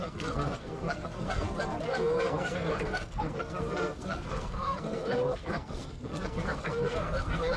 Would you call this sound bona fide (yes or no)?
no